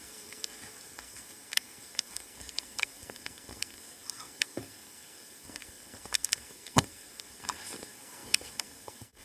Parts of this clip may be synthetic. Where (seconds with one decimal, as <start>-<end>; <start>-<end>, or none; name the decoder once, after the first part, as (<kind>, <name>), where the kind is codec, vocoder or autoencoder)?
0.0-9.2 (codec, SNAC)